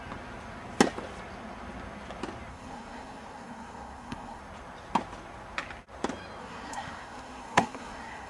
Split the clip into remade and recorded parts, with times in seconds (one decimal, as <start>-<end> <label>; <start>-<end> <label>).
0.0-2.5 recorded; 2.5-4.4 remade; 4.4-6.4 recorded; 6.4-8.3 remade